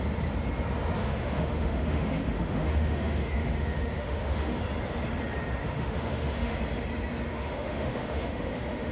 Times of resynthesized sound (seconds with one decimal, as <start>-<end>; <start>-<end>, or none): 1.0-4.6; 5.6-6.6; 7.3-8.9